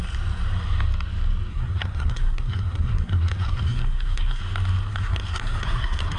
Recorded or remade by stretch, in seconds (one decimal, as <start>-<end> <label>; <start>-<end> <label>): 0.0-1.5 recorded; 1.5-4.4 remade; 4.4-4.9 recorded; 4.9-6.2 remade